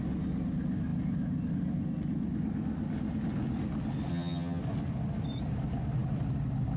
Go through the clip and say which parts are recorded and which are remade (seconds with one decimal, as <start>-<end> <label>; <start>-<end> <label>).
0.0-4.1 recorded; 4.1-4.6 remade; 4.6-6.8 recorded

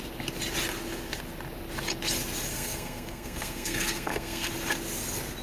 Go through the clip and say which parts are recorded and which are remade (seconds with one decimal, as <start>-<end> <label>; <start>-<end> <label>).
0.0-2.5 recorded; 2.5-4.5 remade; 4.5-5.4 recorded

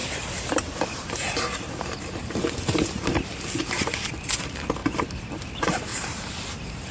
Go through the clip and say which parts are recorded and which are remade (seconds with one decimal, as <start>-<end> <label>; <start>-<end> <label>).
0.0-4.1 remade; 4.1-4.8 recorded; 4.8-5.3 remade; 5.3-5.9 recorded; 5.9-6.9 remade

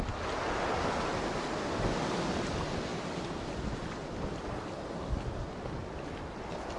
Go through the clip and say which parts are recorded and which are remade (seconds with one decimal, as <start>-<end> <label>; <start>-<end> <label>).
0.0-6.8 recorded

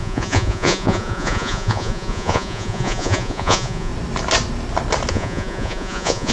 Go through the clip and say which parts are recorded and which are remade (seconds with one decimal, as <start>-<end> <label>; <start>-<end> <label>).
0.0-3.9 remade; 3.9-5.1 recorded; 5.1-6.3 remade

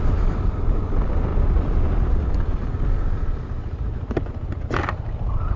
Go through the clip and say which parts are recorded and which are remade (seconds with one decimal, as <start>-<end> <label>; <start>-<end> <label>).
0.0-5.6 recorded